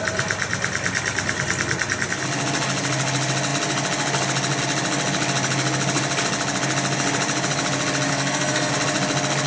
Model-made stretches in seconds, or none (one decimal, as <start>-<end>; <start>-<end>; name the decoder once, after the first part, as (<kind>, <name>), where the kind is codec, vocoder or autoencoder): 8.1-8.7 (codec, SNAC)